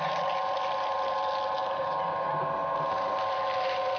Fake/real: real